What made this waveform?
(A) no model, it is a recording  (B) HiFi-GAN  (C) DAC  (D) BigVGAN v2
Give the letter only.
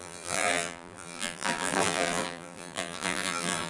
D